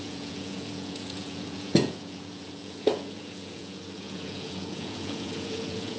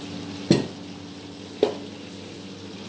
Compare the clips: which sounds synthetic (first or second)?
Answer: first